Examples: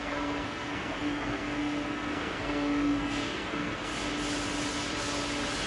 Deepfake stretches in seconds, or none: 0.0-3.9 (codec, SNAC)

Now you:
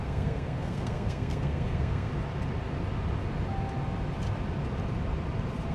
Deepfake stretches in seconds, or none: 0.0-2.1 (codec, SNAC)

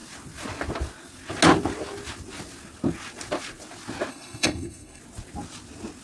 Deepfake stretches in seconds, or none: 4.1-5.0 (codec, SNAC)